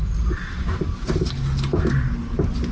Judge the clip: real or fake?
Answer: real